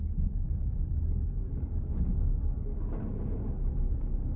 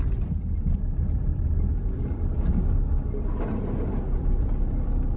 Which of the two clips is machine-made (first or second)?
first